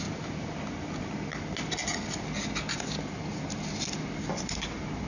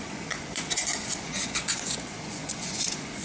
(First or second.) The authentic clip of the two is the first